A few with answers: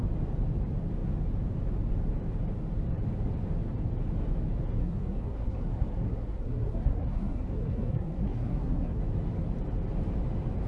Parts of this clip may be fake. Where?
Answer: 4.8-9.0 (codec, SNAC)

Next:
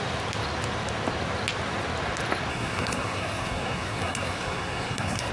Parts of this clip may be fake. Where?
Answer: 2.5-5.3 (codec, SNAC)

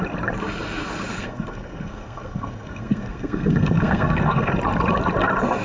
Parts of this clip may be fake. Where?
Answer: 1.1-4.5 (codec, SNAC)

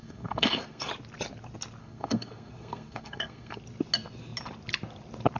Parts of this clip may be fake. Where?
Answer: 0.0-0.9 (codec, SNAC); 1.8-3.6

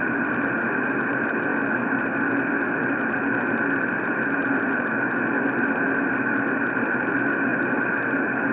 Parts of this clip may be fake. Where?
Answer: none

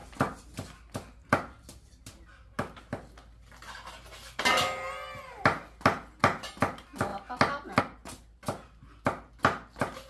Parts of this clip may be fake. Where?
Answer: none